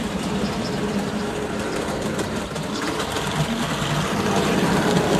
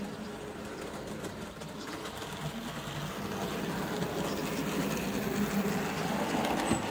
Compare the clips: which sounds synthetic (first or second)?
first